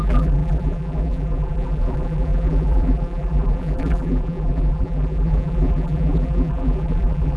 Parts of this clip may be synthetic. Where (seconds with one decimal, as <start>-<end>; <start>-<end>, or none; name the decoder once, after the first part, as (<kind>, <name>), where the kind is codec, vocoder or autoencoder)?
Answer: 0.0-7.4 (vocoder, BigVGAN v2)